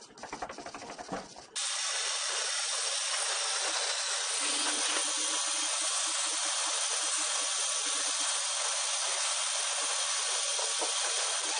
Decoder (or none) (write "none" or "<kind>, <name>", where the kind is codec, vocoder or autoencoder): none